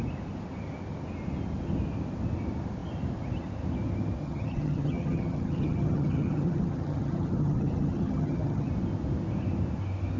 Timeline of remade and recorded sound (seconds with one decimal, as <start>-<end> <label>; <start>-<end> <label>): 0.0-4.2 recorded; 4.2-8.7 remade; 8.7-10.2 recorded